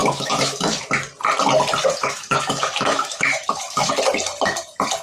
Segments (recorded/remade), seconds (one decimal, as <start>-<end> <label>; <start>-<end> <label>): 0.0-0.8 remade; 0.8-2.0 recorded; 2.0-3.9 remade; 3.9-5.0 recorded